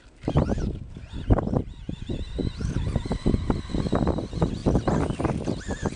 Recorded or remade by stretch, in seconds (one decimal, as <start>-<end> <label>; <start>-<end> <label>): 0.0-6.0 recorded